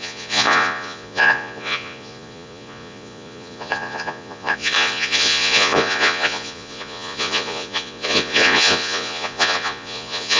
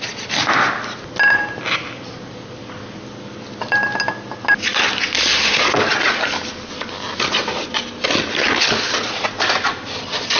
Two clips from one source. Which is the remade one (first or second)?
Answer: first